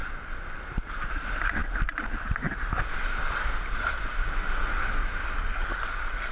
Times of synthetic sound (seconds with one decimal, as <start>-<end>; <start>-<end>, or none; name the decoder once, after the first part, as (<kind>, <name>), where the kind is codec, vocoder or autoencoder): none